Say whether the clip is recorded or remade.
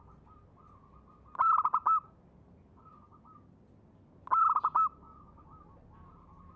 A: recorded